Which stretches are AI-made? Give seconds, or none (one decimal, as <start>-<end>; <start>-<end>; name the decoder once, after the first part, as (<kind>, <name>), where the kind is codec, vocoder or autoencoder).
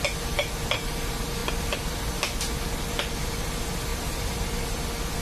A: 3.9-4.6 (vocoder, BigVGAN v2)